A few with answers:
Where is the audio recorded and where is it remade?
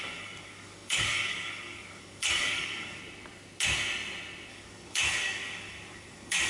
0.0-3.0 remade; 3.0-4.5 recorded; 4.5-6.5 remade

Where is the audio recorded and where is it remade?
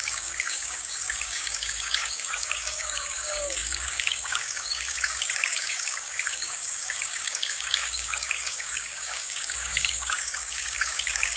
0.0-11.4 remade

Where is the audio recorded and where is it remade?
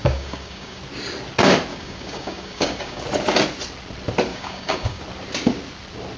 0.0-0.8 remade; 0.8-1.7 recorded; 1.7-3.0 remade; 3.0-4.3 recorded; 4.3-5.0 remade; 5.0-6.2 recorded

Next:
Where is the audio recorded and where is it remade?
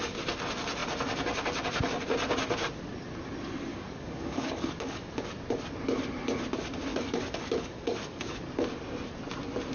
0.0-3.7 recorded; 3.7-5.2 remade; 5.2-6.9 recorded; 6.9-8.4 remade; 8.4-9.7 recorded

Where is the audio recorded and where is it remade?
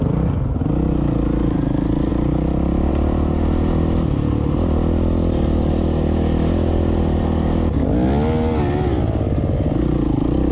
0.0-10.5 recorded